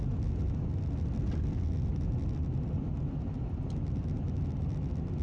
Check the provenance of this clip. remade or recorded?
recorded